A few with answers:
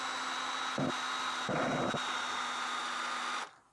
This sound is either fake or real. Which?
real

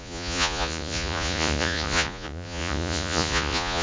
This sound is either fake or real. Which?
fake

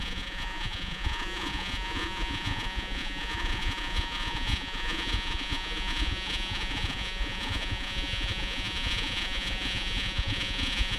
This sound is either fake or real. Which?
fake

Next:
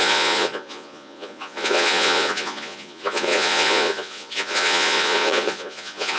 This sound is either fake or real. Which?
fake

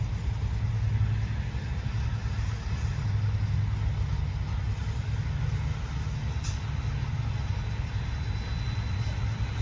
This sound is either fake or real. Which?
real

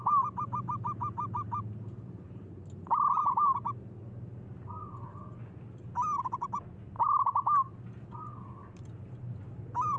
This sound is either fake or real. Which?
real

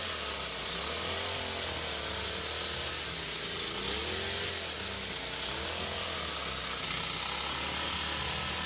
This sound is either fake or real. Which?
real